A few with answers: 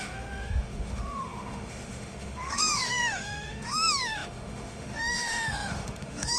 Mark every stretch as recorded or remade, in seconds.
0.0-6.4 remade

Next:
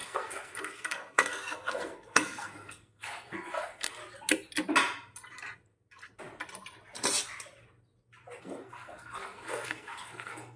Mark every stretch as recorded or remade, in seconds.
0.0-4.0 remade; 4.0-8.4 recorded; 8.4-10.6 remade